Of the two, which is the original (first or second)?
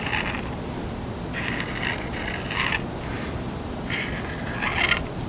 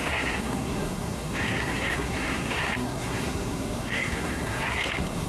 first